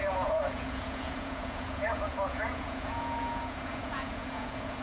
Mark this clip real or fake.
fake